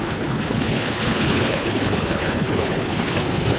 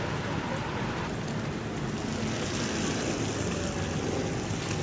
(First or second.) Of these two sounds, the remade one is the first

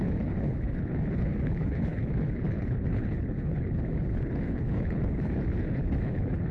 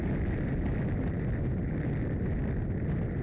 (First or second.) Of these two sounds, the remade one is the first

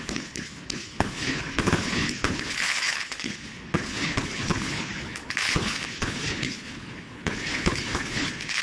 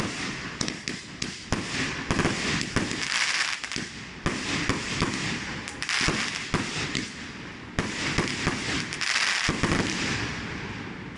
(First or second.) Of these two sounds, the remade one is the first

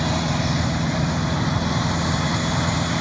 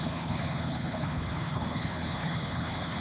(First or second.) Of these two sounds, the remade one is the second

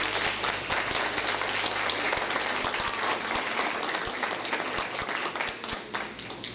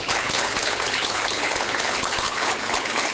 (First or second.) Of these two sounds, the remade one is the second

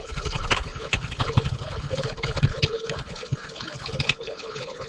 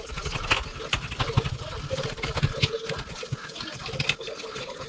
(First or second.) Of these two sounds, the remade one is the first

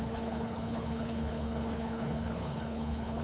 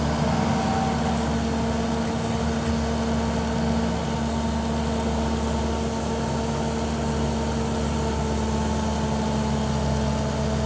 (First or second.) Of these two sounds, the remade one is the first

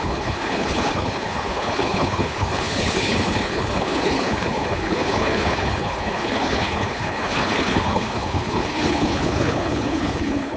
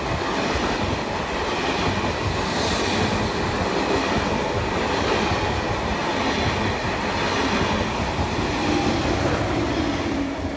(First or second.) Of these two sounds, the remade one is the first